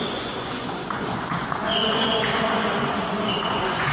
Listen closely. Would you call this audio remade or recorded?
remade